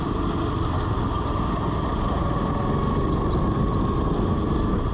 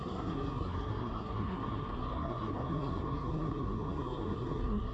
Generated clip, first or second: second